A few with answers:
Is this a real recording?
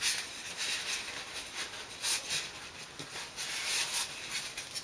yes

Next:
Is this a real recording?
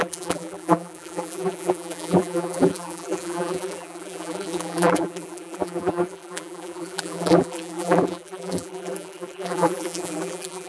no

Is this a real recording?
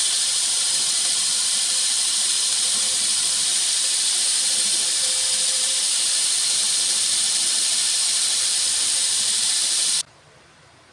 no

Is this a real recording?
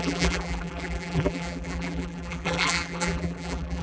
no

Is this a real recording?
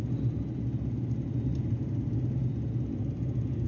yes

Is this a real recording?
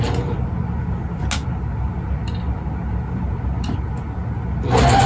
yes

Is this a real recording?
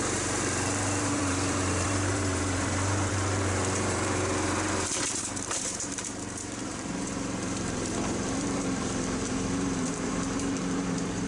no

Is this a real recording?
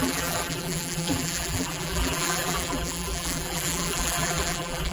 no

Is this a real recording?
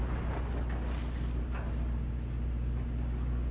yes